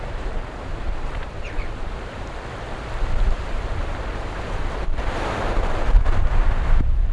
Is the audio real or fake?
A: fake